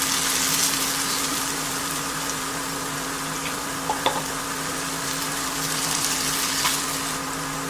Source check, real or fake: real